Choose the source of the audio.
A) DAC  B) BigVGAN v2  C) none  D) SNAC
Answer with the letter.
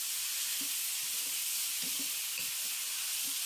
C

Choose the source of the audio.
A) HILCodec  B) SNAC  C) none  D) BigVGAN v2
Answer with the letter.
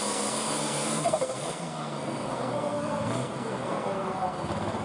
B